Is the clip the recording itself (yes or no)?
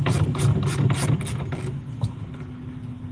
yes